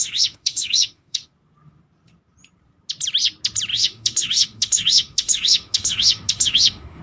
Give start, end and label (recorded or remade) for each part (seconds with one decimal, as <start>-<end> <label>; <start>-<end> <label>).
0.0-1.3 remade; 1.3-3.7 recorded; 3.7-7.0 remade